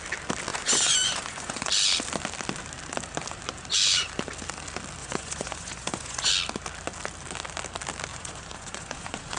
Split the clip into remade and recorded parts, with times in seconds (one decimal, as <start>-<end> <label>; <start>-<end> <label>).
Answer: 0.0-0.5 recorded; 0.5-1.7 remade; 1.7-5.0 recorded; 5.0-6.3 remade; 6.3-8.1 recorded; 8.1-9.4 remade